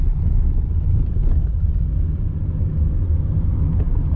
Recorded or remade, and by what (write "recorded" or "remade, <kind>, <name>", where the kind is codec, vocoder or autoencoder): recorded